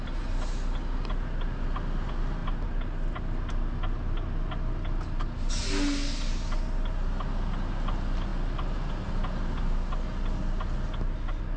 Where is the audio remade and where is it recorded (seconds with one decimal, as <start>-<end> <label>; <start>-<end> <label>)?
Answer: 0.0-11.6 recorded